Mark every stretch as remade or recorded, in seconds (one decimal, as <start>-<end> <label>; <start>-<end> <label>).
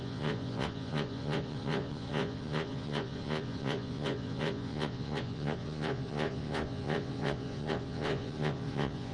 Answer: 0.0-9.1 remade